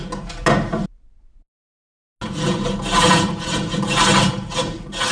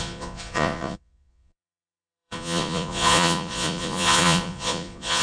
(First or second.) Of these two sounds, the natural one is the first